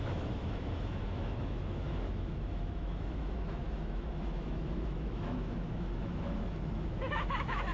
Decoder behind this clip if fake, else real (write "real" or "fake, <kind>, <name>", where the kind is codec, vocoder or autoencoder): fake, autoencoder, DAC-VAE